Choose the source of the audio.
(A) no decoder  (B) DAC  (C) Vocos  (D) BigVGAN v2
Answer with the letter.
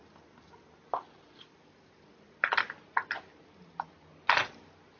A